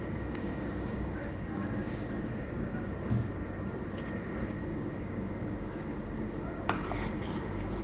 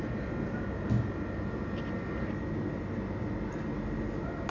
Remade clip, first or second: first